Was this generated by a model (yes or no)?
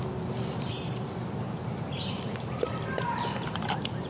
yes